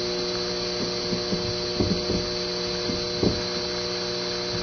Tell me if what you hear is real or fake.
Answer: real